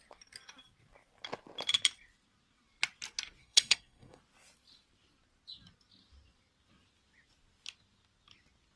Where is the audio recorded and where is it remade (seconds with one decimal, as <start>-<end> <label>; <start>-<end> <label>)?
0.0-3.4 recorded; 3.4-4.2 remade; 4.2-8.8 recorded